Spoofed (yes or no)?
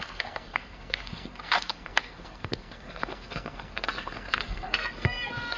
yes